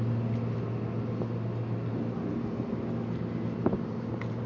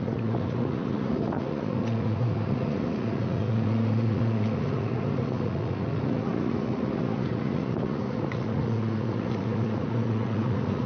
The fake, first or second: second